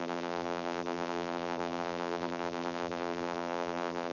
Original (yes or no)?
no